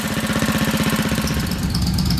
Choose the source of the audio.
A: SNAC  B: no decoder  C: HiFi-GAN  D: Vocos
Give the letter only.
B